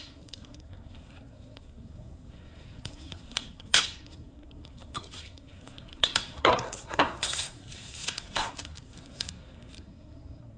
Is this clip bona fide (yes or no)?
no